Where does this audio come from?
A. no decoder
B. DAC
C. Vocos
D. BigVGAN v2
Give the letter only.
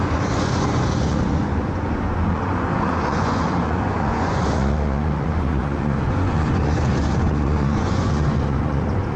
C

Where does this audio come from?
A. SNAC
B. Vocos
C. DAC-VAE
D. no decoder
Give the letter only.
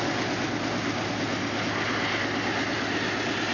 D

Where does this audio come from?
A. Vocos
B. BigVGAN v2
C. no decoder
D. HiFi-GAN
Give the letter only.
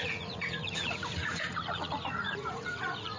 A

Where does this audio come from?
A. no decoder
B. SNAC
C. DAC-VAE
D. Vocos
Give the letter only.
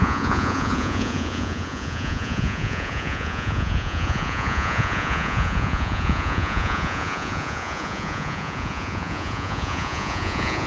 D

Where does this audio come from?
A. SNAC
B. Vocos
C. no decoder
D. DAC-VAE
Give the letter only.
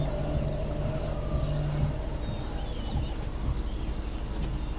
C